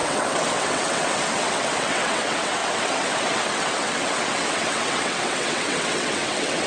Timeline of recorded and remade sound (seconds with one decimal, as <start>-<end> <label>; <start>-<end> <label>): 0.0-6.7 remade